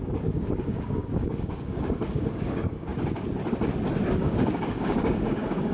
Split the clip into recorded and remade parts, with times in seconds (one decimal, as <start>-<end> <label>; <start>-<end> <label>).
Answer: 0.0-2.9 remade; 2.9-4.1 recorded; 4.1-5.7 remade